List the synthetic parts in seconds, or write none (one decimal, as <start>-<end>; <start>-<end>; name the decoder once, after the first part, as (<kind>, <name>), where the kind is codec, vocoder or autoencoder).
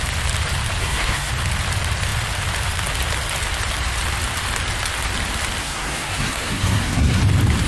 0.8-1.3 (codec, SNAC); 5.6-7.2